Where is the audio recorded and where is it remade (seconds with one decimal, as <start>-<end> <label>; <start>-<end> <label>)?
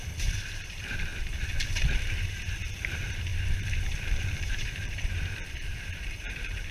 0.0-1.1 remade; 1.1-1.9 recorded; 1.9-6.7 remade